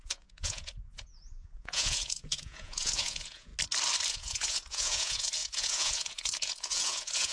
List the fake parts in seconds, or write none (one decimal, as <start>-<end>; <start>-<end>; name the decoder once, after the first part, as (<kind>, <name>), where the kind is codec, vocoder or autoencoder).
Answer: 0.0-3.5 (vocoder, Vocos); 4.1-7.3